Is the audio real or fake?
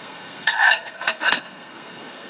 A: fake